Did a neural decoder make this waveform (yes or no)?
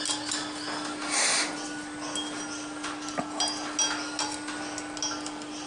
no